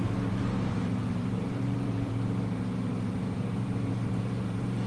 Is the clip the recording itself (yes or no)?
no